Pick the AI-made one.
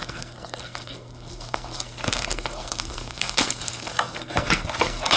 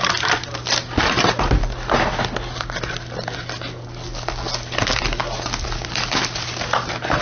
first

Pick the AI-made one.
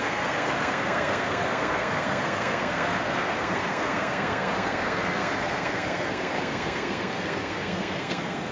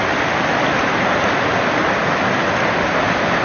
first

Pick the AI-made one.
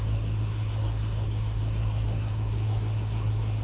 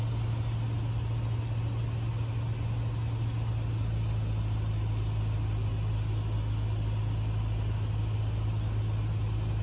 first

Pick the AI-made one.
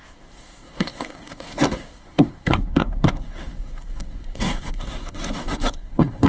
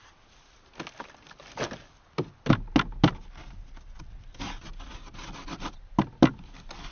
first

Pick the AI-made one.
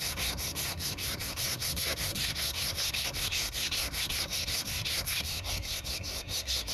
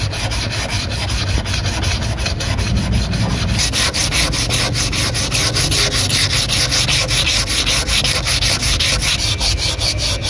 first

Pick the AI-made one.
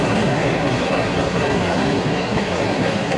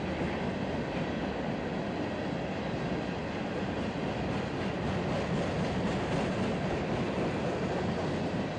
first